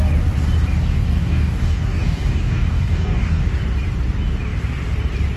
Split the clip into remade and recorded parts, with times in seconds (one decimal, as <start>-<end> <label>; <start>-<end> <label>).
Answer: 0.0-0.9 recorded; 0.9-3.4 remade; 3.4-5.4 recorded